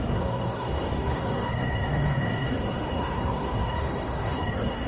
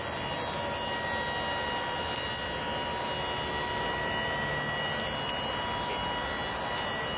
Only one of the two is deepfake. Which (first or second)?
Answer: first